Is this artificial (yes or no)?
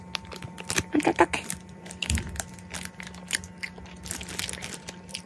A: no